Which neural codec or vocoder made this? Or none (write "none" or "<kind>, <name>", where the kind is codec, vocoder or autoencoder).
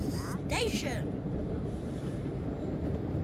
vocoder, BigVGAN v2